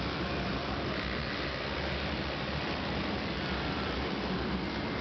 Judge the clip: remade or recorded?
recorded